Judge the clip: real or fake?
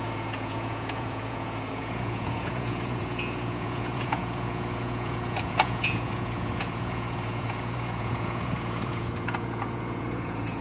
fake